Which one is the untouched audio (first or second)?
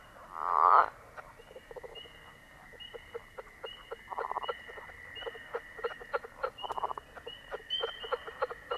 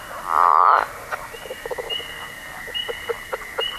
second